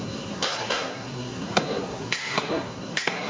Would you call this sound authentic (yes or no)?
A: no